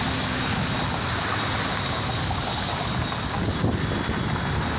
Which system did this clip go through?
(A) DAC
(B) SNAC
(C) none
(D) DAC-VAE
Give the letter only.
C